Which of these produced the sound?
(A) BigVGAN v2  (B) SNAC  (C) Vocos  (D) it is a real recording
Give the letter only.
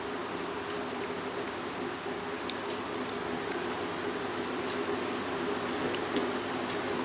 D